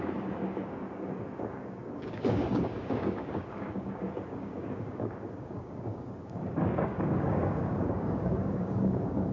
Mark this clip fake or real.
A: fake